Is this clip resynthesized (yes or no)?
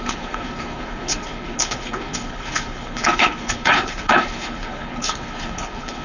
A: yes